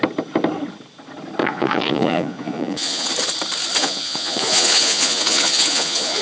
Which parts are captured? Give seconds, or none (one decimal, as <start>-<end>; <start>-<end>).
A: 0.0-1.4; 3.1-3.8